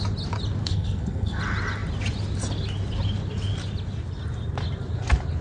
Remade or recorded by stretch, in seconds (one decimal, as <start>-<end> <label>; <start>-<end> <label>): 0.0-0.6 recorded; 0.6-1.4 remade; 1.4-5.4 recorded